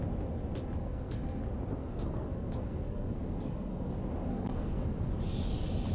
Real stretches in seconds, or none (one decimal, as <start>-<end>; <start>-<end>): 0.0-0.8; 1.4-1.8; 3.9-4.3; 5.1-5.9